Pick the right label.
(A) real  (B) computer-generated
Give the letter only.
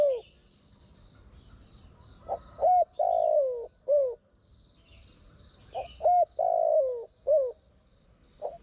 A